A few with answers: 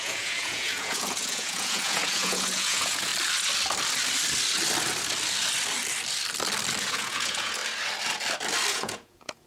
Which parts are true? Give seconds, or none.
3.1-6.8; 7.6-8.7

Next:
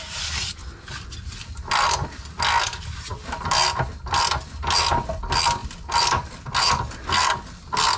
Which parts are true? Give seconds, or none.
0.0-0.6; 2.4-5.6; 6.8-8.0

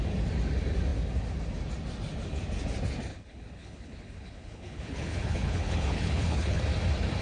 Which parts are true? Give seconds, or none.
0.0-3.1; 6.6-7.2

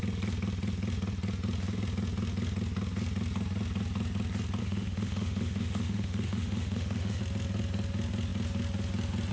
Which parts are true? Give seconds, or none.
0.0-4.6; 7.2-9.3

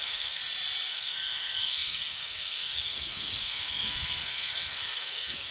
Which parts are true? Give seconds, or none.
0.4-0.9

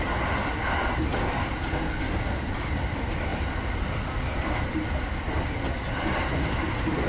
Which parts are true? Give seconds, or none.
0.0-7.1

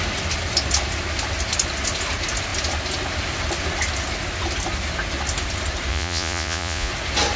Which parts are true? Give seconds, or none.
0.0-5.9; 6.9-7.4